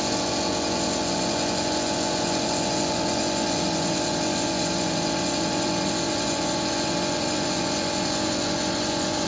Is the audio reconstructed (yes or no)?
yes